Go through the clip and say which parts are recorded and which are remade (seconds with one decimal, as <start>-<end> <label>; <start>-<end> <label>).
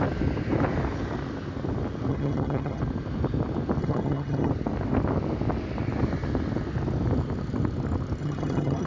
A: 0.0-2.1 recorded; 2.1-2.8 remade; 2.8-3.8 recorded; 3.8-4.5 remade; 4.5-8.2 recorded; 8.2-8.9 remade